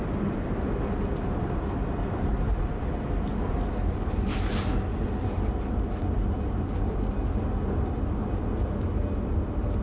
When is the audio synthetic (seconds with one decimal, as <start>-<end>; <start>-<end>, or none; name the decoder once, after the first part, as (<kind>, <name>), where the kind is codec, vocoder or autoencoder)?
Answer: none